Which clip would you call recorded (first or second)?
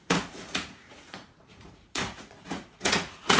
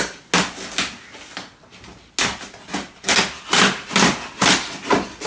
second